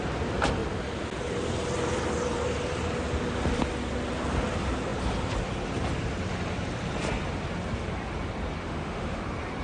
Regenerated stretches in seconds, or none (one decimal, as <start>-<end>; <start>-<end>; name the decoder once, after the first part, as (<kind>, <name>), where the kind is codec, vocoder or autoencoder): 8.6-9.2 (autoencoder, DAC-VAE)